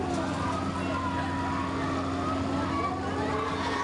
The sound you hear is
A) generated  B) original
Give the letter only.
B